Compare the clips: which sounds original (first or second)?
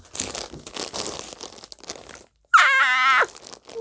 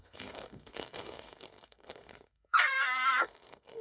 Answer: first